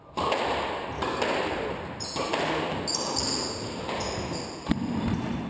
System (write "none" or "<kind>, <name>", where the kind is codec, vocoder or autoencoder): none